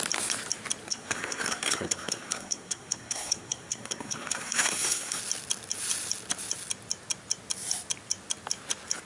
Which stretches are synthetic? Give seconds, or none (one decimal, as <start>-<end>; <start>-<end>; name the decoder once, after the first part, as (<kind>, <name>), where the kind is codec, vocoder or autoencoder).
0.9-5.2 (codec, SNAC)